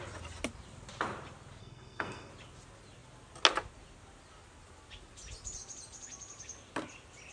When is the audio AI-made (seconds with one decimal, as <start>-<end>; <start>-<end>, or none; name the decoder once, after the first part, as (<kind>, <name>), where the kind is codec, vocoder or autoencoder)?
1.6-2.3 (codec, SNAC)